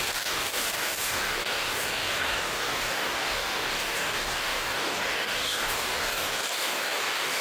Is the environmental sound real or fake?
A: fake